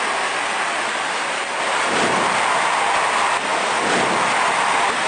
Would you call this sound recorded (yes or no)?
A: yes